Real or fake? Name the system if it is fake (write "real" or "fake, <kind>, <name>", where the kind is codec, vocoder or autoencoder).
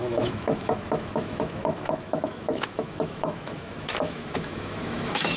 fake, autoencoder, DAC-VAE